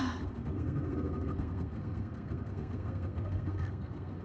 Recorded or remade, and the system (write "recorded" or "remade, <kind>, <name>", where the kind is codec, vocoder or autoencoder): remade, codec, SNAC